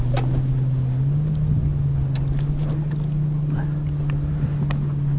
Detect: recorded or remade recorded